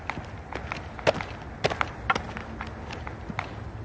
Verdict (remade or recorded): recorded